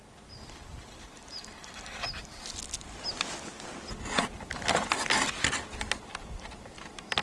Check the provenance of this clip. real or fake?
real